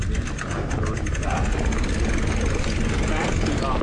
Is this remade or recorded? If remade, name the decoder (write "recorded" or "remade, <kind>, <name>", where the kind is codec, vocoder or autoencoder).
recorded